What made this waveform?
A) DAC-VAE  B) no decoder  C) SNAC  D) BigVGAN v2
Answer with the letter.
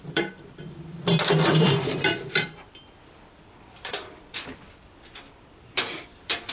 D